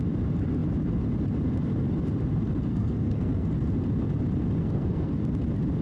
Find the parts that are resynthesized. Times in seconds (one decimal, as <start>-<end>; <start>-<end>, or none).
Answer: 2.7-3.5; 4.6-5.1

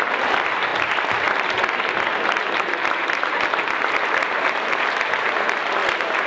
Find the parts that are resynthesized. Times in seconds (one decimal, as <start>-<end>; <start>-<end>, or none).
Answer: none

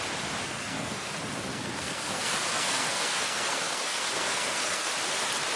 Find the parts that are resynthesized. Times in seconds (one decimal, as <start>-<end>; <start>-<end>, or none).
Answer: 0.4-1.1; 1.5-4.9

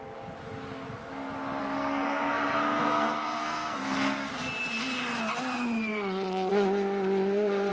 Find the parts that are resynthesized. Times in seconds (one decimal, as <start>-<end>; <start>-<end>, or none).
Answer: 1.6-4.3

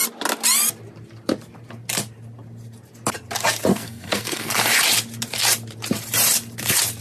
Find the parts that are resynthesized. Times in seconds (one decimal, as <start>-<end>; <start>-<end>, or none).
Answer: 3.7-4.5

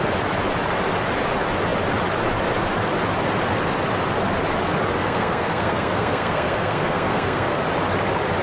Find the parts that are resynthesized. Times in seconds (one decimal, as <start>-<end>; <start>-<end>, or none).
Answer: 5.0-7.6

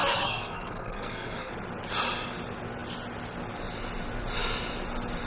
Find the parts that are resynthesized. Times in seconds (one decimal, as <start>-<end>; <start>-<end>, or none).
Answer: 0.0-1.5

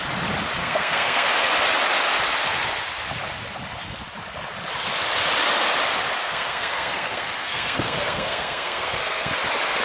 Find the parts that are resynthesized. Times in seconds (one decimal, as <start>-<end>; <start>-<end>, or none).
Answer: 0.6-1.3; 6.2-9.3